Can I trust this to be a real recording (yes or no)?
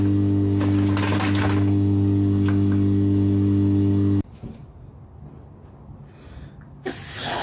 yes